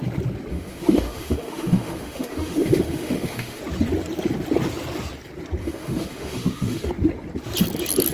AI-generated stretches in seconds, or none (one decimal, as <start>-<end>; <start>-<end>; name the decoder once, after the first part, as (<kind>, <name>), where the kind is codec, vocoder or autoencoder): 0.5-3.6 (autoencoder, DAC-VAE); 5.6-6.9